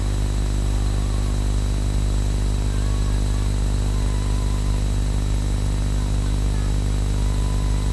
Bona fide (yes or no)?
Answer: yes